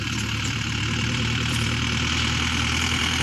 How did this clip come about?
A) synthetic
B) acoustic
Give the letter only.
A